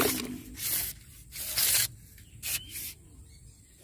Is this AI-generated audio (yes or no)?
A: no